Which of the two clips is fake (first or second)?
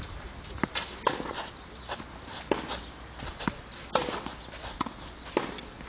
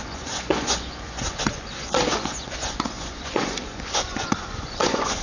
second